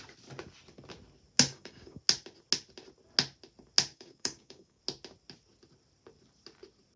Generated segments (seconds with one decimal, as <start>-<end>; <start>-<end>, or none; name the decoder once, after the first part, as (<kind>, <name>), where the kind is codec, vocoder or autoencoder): 1.5-2.0 (codec, DAC); 3.9-4.8